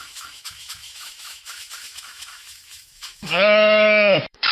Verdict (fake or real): fake